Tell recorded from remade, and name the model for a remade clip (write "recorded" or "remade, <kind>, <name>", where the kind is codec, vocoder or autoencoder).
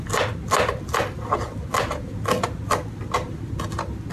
recorded